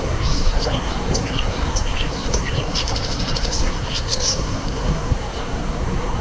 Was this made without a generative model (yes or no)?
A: no